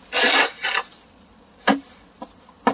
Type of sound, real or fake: real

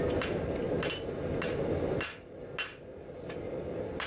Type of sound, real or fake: real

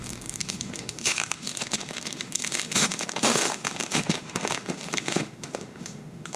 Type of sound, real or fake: fake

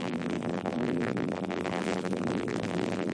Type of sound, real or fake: fake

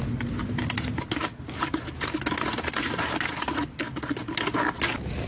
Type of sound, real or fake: real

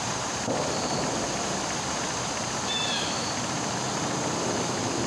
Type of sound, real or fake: real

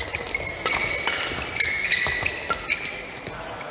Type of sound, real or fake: real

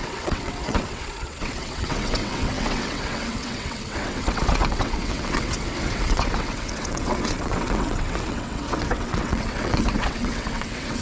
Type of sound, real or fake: fake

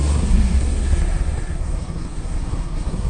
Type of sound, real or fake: fake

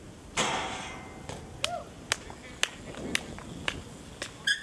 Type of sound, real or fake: real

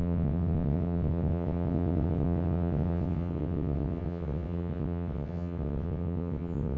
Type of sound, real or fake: fake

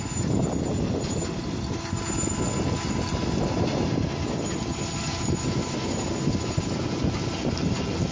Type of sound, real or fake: real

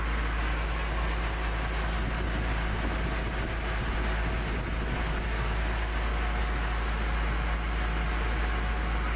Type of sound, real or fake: real